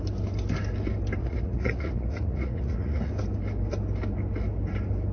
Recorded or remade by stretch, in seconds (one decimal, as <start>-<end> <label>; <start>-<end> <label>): 0.0-1.2 recorded; 1.2-3.1 remade; 3.1-5.1 recorded